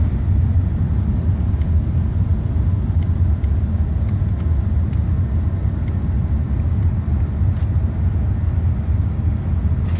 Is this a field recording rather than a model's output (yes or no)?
yes